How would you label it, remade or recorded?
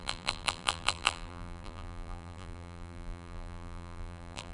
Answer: remade